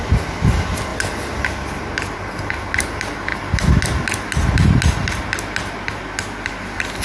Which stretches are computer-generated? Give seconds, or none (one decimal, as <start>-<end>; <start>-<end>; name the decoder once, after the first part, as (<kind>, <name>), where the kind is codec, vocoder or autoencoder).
none